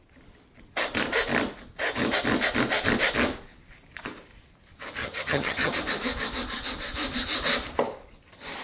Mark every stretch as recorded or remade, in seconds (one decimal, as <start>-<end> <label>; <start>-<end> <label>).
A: 0.0-5.0 recorded; 5.0-5.7 remade; 5.7-8.6 recorded

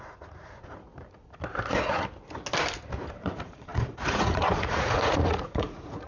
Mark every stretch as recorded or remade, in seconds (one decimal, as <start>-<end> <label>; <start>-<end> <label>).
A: 0.0-0.9 remade; 0.9-3.2 recorded; 3.2-6.1 remade

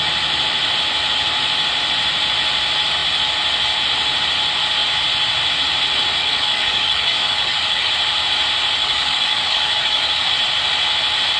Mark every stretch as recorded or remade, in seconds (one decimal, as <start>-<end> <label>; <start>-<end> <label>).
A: 0.0-6.2 recorded; 6.2-7.9 remade; 7.9-8.8 recorded; 8.8-10.3 remade; 10.3-11.4 recorded

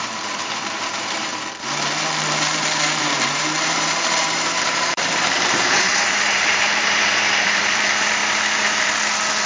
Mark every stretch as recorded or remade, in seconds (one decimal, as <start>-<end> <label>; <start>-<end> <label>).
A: 0.0-1.3 remade; 1.3-3.0 recorded; 3.0-8.2 remade; 8.2-9.5 recorded

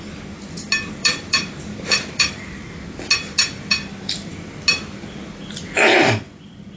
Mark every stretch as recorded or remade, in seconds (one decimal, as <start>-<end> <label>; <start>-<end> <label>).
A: 0.0-1.0 recorded; 1.0-2.4 remade; 2.4-6.8 recorded